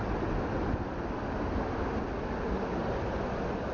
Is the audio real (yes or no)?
yes